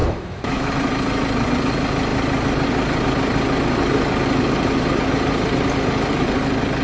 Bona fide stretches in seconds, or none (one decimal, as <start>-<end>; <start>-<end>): 0.7-6.8